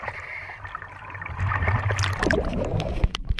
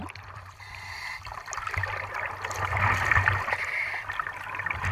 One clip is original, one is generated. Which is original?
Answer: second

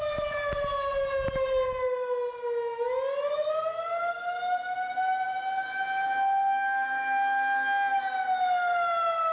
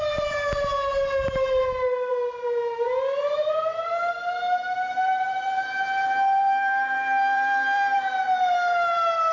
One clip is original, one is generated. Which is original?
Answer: first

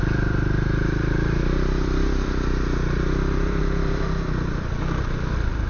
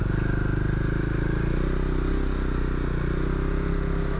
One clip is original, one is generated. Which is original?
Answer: second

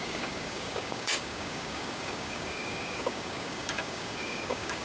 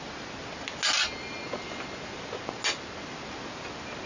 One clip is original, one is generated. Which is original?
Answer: second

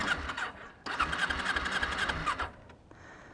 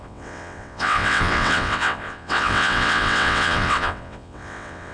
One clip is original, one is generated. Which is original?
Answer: first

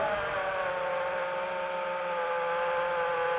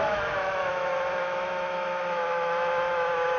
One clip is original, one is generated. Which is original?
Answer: first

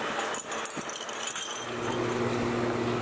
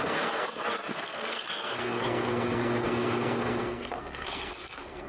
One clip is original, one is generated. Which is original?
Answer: first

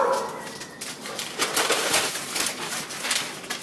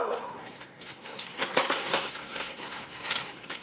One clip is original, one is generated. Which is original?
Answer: first